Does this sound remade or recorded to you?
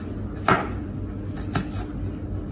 recorded